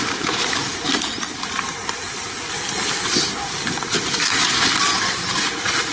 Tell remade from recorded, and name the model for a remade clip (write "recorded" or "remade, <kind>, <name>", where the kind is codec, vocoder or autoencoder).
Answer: recorded